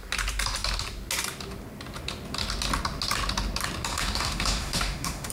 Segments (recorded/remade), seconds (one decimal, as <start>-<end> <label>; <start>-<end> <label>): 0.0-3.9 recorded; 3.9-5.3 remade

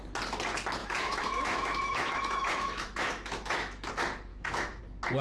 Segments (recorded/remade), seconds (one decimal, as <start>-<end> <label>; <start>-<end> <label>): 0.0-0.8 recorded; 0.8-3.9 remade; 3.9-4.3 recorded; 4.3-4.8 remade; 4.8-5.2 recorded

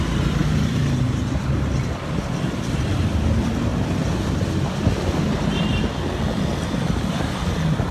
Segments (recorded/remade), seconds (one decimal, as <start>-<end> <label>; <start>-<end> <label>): 0.0-7.9 recorded

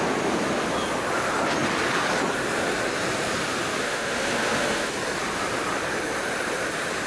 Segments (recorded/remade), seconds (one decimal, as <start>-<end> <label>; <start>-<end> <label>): 0.0-3.8 recorded; 3.8-4.9 remade; 4.9-7.1 recorded